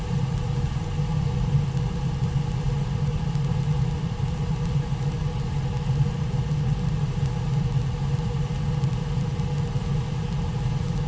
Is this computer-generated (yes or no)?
no